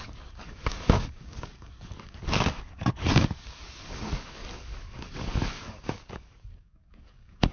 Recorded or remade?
remade